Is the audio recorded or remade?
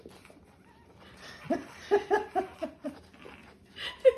recorded